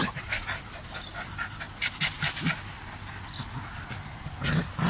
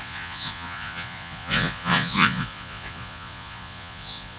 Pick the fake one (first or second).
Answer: second